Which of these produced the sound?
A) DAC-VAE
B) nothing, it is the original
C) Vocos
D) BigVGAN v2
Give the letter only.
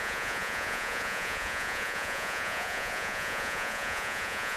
C